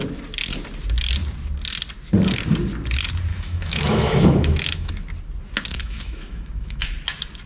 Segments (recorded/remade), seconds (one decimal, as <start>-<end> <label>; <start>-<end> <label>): 0.0-3.3 recorded; 3.3-4.9 remade; 4.9-5.7 recorded; 5.7-6.9 remade; 6.9-7.5 recorded